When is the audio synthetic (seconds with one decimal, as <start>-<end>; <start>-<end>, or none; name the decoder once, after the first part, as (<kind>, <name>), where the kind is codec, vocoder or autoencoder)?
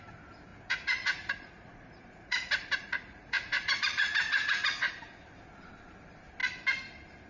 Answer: 0.5-4.9 (vocoder, Vocos)